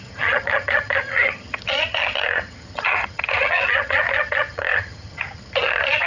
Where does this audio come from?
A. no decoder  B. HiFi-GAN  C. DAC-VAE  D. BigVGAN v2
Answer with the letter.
B